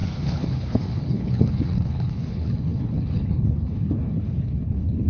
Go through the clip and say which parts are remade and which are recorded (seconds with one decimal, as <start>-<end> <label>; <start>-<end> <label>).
0.0-5.1 remade